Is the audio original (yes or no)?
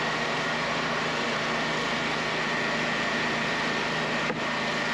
yes